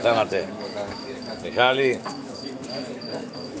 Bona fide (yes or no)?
no